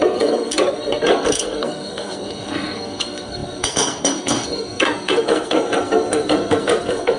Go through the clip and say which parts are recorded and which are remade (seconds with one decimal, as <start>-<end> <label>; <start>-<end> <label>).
0.0-7.2 remade